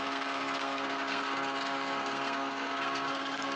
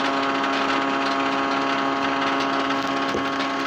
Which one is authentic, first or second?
second